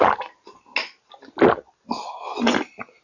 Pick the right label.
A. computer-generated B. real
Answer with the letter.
B